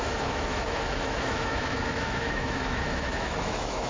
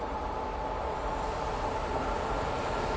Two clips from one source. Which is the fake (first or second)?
first